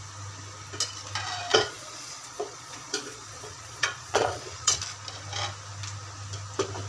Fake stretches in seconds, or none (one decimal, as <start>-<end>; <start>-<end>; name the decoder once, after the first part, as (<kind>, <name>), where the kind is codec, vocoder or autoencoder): 1.5-4.8 (vocoder, Vocos)